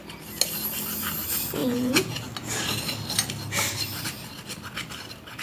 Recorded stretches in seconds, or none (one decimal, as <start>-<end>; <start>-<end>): 0.0-1.6; 2.3-5.4